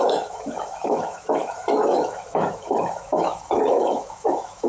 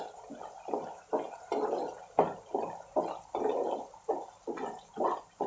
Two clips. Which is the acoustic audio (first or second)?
second